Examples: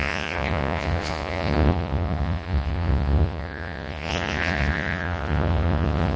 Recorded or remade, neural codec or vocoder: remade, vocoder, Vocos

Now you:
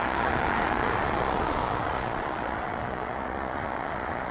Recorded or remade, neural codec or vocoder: remade, vocoder, Vocos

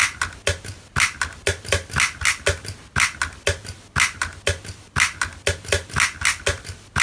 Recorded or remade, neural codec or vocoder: recorded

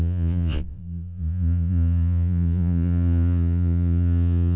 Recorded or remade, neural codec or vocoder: remade, vocoder, Vocos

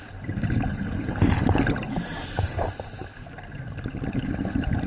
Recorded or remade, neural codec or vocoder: recorded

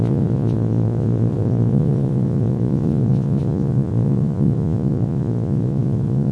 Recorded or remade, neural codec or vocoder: remade, vocoder, Vocos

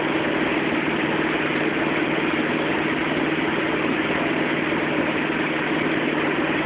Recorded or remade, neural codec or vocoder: recorded